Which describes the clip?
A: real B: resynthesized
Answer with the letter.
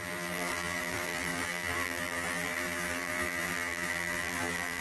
B